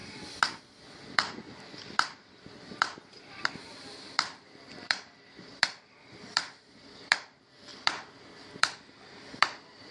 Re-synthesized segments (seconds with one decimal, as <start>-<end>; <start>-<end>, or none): 0.6-9.9